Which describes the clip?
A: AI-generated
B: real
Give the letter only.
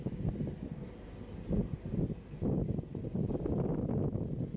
B